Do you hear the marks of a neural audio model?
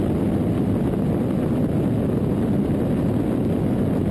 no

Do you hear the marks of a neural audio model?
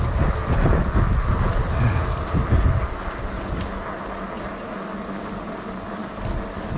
no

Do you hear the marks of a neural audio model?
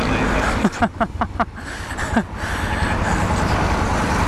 no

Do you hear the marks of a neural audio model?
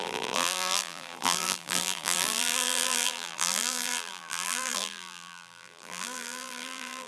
yes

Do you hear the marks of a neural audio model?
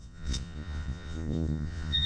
yes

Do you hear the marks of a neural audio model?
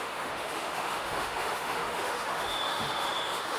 yes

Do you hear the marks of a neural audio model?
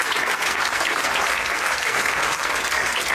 yes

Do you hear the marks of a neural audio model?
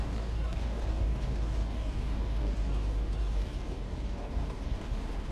yes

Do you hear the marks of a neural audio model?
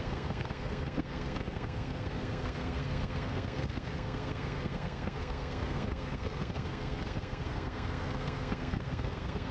yes